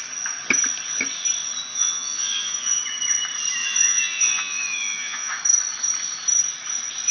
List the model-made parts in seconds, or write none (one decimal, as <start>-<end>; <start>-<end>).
1.7-2.8; 3.6-5.3